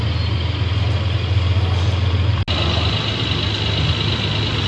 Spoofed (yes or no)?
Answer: no